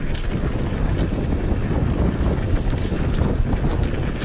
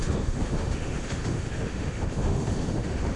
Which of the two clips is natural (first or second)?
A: first